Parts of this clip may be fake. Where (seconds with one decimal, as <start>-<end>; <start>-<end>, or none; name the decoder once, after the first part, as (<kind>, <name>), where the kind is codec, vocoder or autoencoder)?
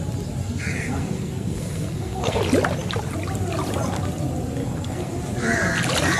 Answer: 0.4-2.4 (codec, SNAC); 4.6-5.1